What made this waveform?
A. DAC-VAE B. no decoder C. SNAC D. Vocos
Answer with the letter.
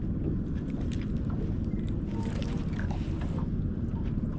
B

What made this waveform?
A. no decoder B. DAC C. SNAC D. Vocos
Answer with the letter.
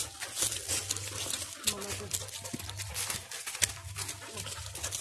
A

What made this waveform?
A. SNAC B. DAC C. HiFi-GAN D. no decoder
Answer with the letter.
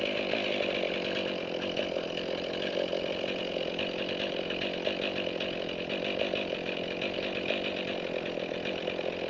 D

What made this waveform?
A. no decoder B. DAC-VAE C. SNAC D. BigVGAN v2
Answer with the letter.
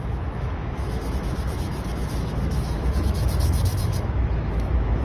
B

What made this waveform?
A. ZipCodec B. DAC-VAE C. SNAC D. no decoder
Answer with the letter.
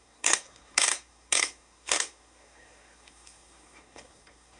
C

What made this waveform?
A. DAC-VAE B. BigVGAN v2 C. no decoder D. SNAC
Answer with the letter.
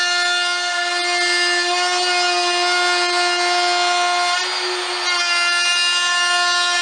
C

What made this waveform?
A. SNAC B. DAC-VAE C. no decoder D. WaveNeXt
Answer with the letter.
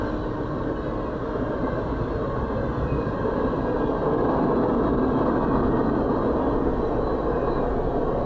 C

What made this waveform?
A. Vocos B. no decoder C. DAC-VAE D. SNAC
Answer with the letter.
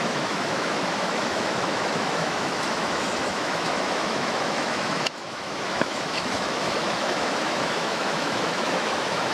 C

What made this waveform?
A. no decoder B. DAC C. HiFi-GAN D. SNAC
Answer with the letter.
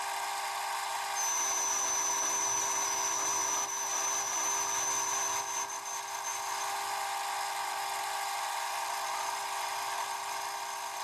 A